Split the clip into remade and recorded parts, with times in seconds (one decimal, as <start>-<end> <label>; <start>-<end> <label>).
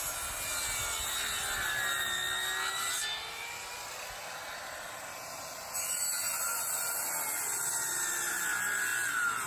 0.0-9.5 recorded